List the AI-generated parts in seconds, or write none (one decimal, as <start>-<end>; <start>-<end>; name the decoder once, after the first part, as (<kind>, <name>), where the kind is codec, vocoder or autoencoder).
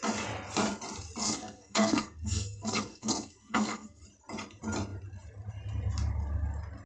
1.2-4.0 (codec, SNAC)